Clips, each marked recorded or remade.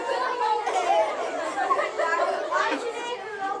recorded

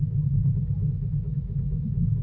remade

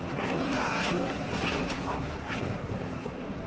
remade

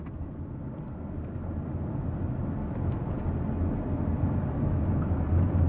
recorded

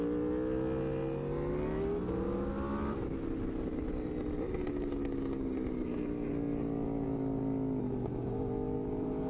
recorded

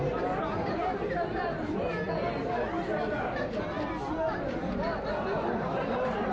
recorded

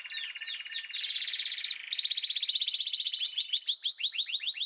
recorded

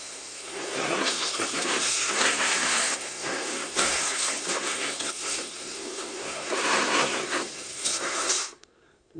remade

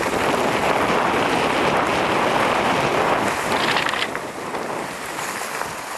recorded